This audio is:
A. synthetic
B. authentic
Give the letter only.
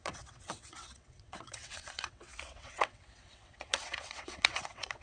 A